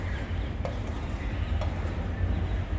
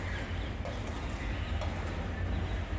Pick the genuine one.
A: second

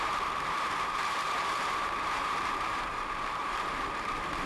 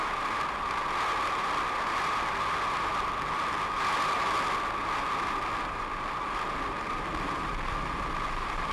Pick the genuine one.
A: second